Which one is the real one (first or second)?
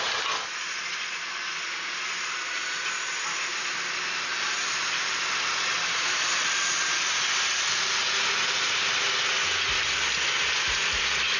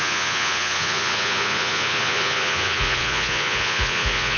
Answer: first